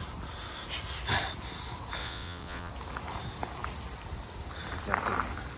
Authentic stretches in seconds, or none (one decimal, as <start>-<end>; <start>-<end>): 0.0-2.0; 2.7-5.6